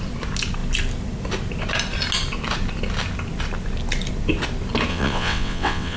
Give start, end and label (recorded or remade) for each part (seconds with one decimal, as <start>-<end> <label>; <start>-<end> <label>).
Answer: 0.0-4.9 recorded; 4.9-6.0 remade